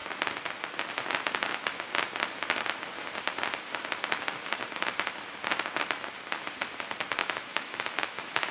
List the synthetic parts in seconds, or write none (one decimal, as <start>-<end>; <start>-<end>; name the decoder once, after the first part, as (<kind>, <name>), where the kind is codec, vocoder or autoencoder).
7.2-8.5 (autoencoder, DAC-VAE)